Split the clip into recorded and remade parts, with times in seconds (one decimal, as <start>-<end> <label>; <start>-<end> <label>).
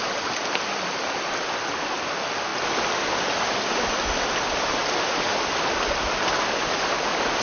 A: 0.0-2.5 remade; 2.5-3.1 recorded; 3.1-4.8 remade; 4.8-5.5 recorded; 5.5-7.4 remade